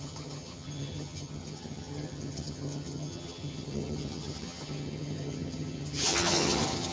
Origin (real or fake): fake